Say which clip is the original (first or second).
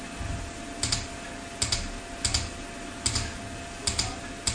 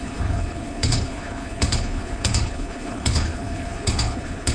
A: first